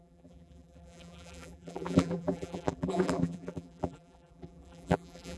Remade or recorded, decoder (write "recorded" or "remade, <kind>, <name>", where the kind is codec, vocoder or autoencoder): remade, vocoder, BigVGAN v2